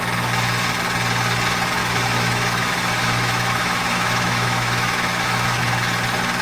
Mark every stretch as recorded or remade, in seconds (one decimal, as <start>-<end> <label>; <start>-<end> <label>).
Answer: 0.0-1.8 recorded; 1.8-5.6 remade; 5.6-6.4 recorded